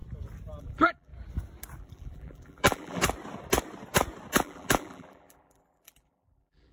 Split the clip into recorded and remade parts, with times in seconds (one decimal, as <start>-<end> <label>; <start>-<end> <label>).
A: 0.0-0.6 recorded; 0.6-1.1 remade; 1.1-1.8 recorded; 1.8-3.0 remade; 3.0-4.3 recorded; 4.3-6.7 remade